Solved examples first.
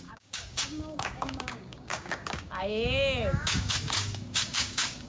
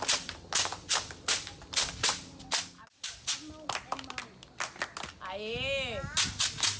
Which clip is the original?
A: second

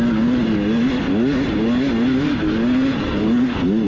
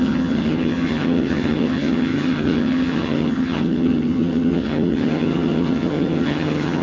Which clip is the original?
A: first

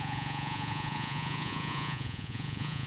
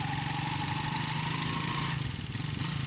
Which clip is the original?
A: second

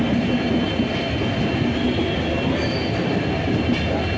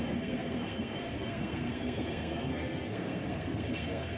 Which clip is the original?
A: first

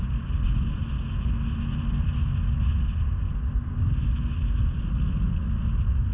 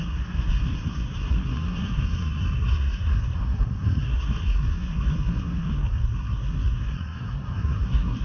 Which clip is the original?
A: first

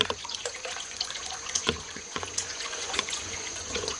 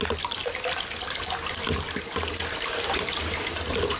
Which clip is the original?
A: second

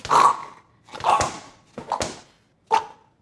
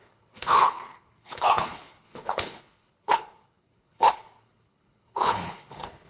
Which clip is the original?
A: first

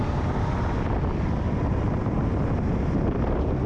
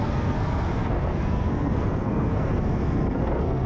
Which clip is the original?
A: first